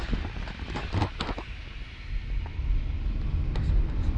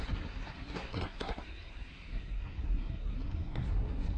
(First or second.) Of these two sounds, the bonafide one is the first